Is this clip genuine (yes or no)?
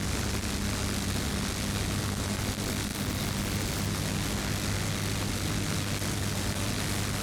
yes